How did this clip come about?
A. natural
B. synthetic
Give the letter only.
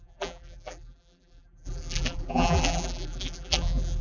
B